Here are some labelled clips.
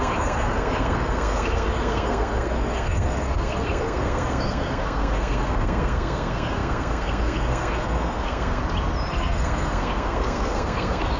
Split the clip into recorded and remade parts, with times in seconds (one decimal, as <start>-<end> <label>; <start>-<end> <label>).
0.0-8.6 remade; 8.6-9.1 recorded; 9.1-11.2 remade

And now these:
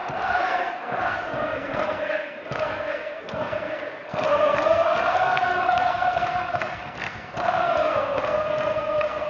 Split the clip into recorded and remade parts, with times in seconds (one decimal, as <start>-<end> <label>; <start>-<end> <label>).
0.0-9.3 remade

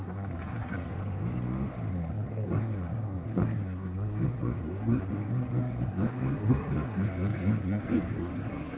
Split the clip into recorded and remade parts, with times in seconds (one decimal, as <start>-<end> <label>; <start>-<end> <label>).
0.0-0.9 remade; 0.9-1.9 recorded; 1.9-8.8 remade

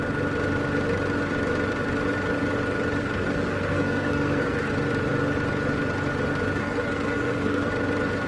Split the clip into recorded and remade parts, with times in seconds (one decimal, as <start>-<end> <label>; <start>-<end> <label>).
0.0-3.0 recorded; 3.0-4.7 remade; 4.7-6.6 recorded; 6.6-7.7 remade; 7.7-8.3 recorded

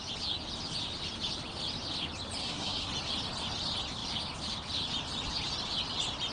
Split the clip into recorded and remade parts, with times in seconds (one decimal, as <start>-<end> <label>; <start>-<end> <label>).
0.0-2.4 recorded; 2.4-2.9 remade; 2.9-6.3 recorded